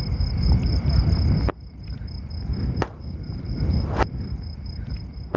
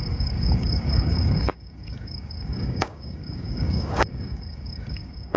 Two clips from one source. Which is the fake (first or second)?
second